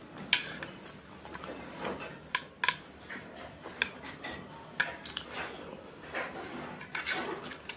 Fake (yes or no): no